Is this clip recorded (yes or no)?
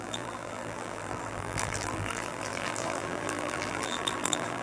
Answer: no